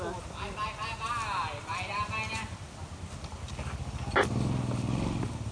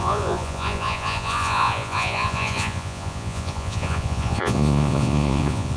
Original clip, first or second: first